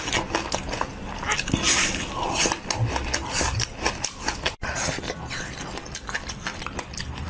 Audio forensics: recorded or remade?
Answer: recorded